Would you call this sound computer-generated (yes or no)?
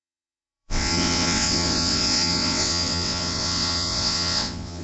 yes